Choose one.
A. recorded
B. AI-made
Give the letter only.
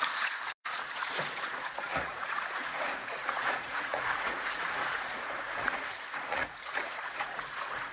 B